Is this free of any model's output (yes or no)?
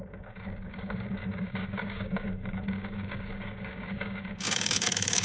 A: no